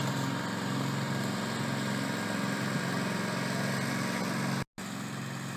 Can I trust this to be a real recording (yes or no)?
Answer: yes